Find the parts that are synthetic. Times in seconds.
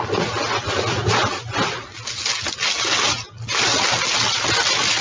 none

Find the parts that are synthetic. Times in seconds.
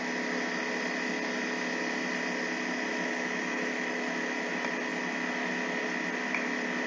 2.9-4.5 (autoencoder, DAC-VAE)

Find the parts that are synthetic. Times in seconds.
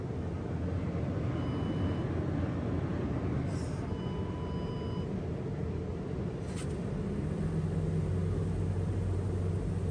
none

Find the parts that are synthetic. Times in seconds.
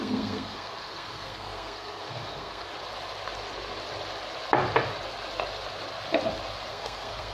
0.0-2.7 (codec, SNAC); 6.7-7.3